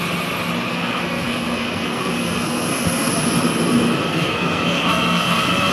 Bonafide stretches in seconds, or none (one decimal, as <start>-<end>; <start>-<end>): 0.0-0.7; 3.1-4.1